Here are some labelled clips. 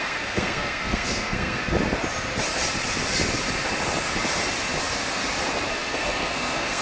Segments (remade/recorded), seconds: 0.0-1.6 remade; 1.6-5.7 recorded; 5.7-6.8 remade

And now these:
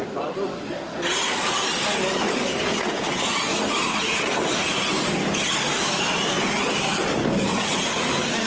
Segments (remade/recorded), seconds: 0.0-3.5 recorded; 3.5-4.2 remade; 4.2-7.5 recorded; 7.5-8.1 remade; 8.1-8.5 recorded